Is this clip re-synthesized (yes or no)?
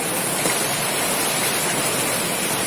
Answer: no